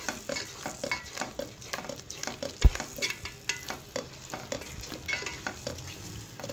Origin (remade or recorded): recorded